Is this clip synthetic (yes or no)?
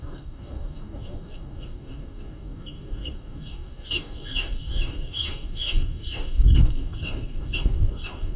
yes